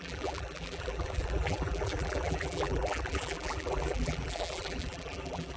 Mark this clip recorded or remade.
remade